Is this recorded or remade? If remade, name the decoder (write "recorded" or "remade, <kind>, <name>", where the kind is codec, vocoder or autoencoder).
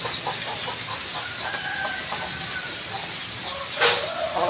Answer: recorded